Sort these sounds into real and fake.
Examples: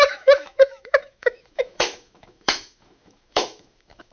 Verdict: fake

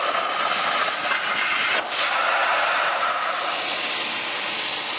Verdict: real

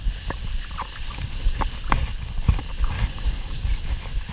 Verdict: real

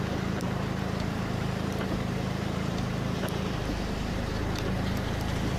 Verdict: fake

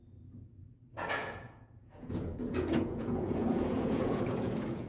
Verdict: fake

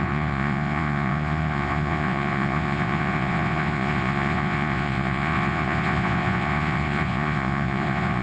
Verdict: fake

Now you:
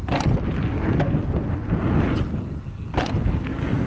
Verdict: real